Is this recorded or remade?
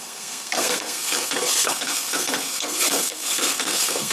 remade